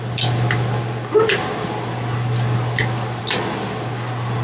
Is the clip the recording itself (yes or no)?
yes